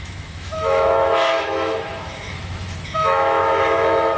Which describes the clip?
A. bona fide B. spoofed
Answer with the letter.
B